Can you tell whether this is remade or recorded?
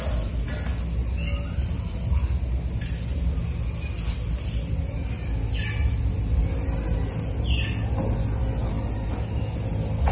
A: recorded